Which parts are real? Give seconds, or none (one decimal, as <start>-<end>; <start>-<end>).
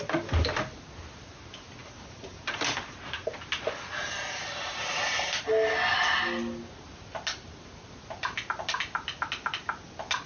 0.0-10.3